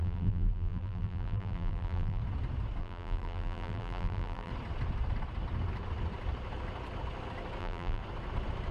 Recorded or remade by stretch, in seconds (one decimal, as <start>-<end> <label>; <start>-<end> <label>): 0.0-2.2 remade; 2.2-2.8 recorded; 2.8-4.5 remade; 4.5-7.6 recorded; 7.6-8.0 remade; 8.0-8.7 recorded